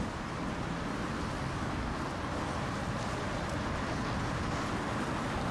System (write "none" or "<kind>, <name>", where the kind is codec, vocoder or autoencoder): none